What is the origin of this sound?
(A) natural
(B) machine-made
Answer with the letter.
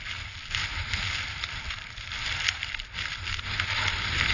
A